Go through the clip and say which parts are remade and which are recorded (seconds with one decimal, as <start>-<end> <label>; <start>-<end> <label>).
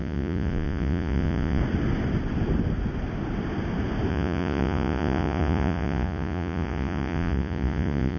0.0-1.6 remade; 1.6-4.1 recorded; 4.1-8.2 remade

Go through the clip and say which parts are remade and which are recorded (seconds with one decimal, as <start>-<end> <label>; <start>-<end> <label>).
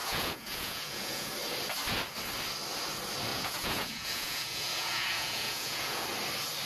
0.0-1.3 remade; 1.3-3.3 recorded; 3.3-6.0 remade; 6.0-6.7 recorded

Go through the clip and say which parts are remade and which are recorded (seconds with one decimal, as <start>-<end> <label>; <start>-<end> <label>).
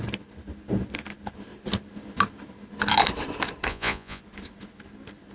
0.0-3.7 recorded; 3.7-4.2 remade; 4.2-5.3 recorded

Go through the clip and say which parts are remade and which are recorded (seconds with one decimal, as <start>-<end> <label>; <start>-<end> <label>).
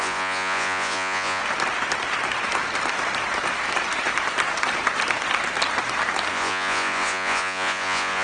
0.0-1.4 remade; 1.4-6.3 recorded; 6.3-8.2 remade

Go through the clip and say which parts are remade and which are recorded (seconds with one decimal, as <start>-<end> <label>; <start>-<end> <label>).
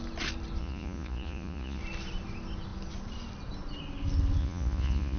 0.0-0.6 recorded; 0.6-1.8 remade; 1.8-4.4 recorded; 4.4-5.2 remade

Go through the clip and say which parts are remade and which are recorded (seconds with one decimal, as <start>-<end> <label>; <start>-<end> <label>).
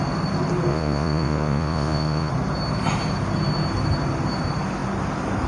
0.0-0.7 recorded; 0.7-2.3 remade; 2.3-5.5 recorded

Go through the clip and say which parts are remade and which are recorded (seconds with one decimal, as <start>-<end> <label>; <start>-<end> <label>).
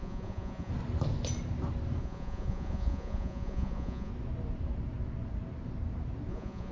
0.0-0.7 remade; 0.7-2.0 recorded; 2.0-4.1 remade; 4.1-6.3 recorded; 6.3-6.7 remade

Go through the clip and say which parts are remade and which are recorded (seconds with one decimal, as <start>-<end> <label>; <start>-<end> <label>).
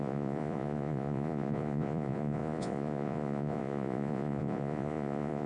0.0-5.5 remade